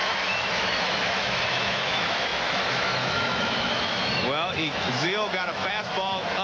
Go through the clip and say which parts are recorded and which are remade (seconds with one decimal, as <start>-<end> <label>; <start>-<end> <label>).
0.0-6.4 remade